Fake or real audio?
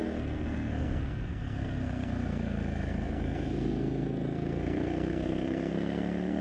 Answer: fake